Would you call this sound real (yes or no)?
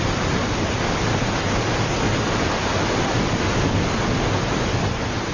yes